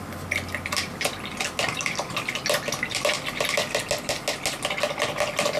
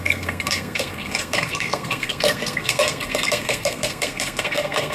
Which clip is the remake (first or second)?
second